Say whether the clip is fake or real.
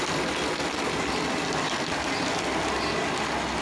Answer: real